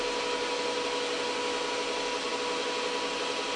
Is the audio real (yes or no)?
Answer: yes